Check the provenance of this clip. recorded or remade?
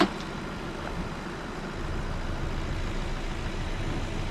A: recorded